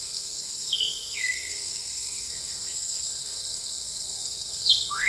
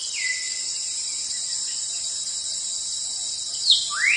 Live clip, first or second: second